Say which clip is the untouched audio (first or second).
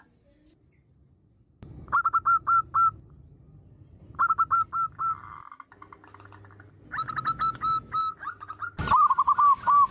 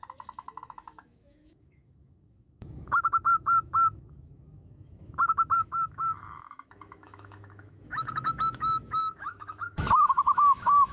first